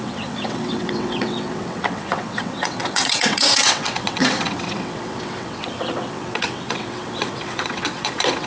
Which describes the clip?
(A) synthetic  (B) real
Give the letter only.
A